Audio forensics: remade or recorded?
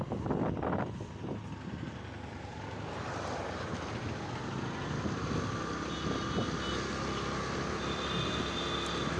recorded